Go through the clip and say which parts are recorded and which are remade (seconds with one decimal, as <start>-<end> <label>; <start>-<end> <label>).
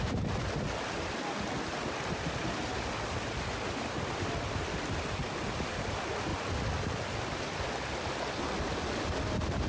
0.0-9.7 recorded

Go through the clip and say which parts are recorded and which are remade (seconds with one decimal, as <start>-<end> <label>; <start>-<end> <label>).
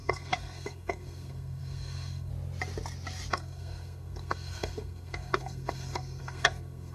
0.0-2.3 remade; 2.3-3.3 recorded; 3.3-6.9 remade